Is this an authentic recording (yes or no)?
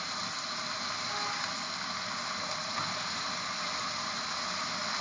yes